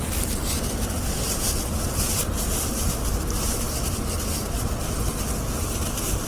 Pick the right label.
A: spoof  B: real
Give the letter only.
B